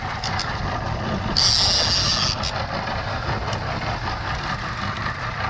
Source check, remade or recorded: recorded